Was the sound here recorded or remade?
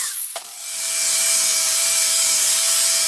remade